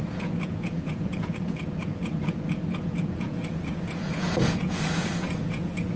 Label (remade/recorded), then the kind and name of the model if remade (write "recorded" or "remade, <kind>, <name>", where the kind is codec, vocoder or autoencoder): remade, vocoder, Vocos